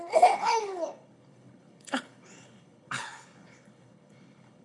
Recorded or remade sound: remade